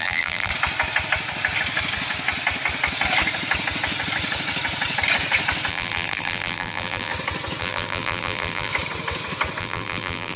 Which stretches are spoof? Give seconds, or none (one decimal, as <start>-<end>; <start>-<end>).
0.0-0.5; 5.7-7.1; 7.6-8.7; 9.6-10.4